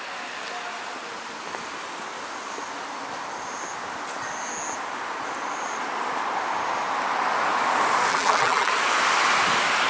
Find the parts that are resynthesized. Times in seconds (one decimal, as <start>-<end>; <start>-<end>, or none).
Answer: 8.1-8.7